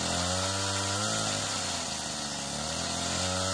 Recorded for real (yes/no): yes